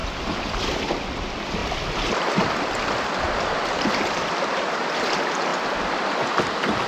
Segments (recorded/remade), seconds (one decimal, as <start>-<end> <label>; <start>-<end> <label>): 0.0-1.0 recorded; 1.0-1.6 remade; 1.6-3.2 recorded; 3.2-6.9 remade